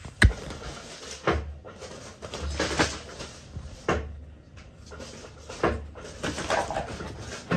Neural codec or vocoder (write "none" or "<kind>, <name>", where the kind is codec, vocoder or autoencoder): none